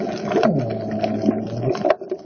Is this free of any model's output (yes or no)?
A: yes